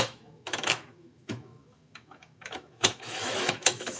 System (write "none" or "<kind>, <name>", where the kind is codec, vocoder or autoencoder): autoencoder, DAC-VAE